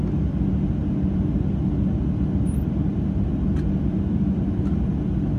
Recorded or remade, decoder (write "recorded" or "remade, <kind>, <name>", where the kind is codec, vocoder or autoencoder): recorded